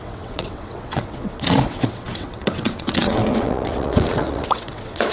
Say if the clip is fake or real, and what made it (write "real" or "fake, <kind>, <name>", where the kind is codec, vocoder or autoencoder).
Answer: fake, vocoder, WaveNeXt